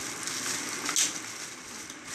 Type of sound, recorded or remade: recorded